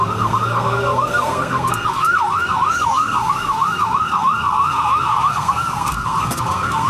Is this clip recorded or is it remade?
remade